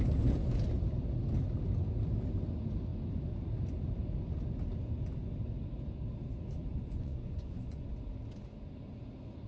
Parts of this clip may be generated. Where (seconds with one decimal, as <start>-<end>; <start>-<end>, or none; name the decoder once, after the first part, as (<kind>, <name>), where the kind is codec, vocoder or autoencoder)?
6.7-7.9 (vocoder, Vocos)